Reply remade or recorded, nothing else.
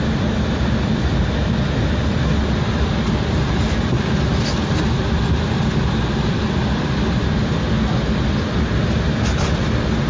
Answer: recorded